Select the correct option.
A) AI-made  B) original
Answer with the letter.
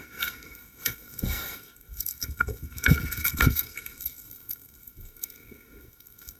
A